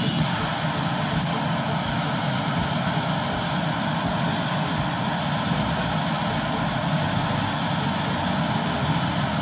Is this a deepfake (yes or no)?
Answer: no